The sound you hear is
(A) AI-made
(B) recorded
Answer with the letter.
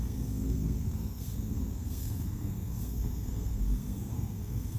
A